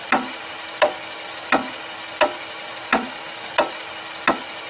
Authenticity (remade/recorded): recorded